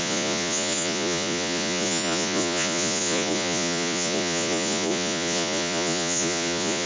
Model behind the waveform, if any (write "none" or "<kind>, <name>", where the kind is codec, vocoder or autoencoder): vocoder, Vocos